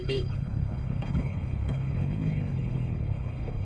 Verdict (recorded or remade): remade